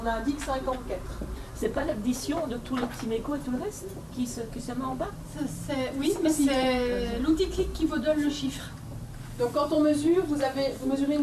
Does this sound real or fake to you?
fake